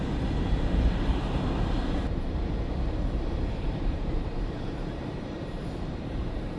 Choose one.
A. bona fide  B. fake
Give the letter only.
B